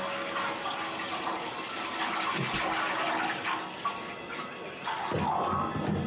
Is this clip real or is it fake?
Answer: real